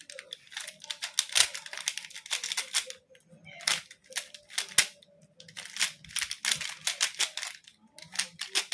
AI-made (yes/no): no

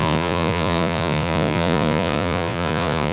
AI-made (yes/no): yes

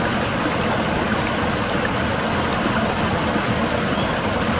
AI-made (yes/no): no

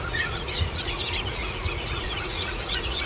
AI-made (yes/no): yes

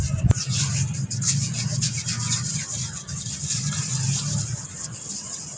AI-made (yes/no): no